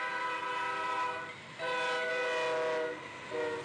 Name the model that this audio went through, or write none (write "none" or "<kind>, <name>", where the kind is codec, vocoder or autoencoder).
none